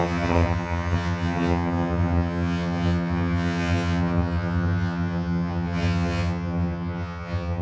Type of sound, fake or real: fake